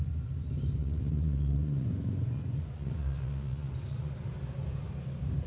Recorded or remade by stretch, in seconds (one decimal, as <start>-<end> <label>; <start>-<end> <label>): 0.0-0.8 recorded; 0.8-4.1 remade; 4.1-5.5 recorded